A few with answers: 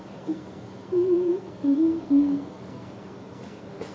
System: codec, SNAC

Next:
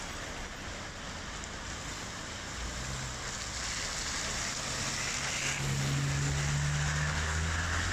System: none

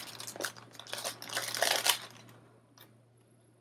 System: none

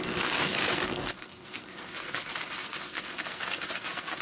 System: codec, SNAC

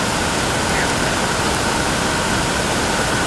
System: none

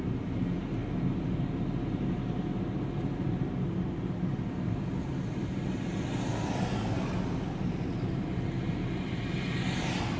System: none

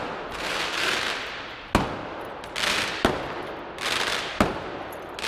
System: none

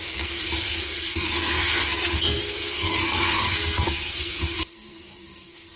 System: codec, SNAC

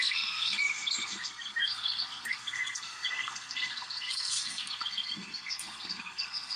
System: codec, SNAC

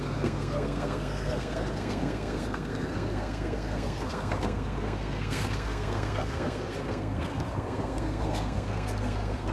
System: codec, SNAC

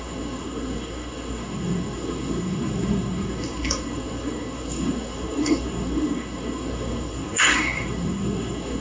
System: codec, SNAC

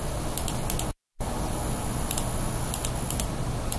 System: none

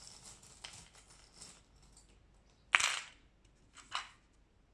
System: none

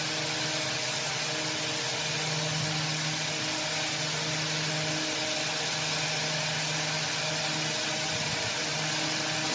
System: none